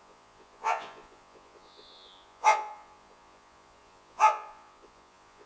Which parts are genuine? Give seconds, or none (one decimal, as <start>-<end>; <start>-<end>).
none